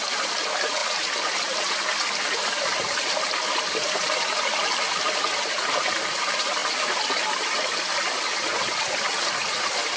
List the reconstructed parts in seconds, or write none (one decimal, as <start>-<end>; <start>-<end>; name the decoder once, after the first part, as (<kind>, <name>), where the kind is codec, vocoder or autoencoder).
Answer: none